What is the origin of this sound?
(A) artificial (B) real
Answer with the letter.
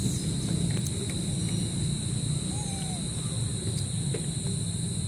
B